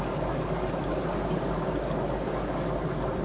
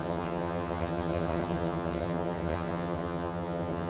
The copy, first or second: second